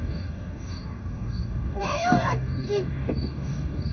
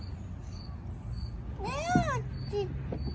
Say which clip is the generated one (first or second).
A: first